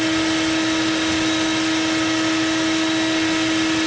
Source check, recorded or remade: recorded